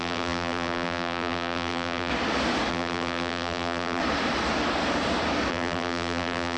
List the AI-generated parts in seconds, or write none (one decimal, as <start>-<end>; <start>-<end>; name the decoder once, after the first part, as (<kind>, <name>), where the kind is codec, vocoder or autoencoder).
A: 0.0-2.1 (vocoder, BigVGAN v2); 2.7-4.0; 5.5-6.6